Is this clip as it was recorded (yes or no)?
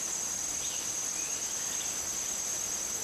yes